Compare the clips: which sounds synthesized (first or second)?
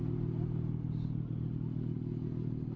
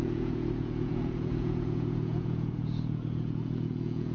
second